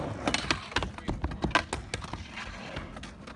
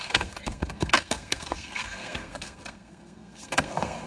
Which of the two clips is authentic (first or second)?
first